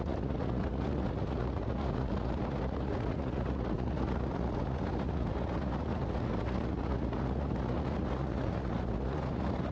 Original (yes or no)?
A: no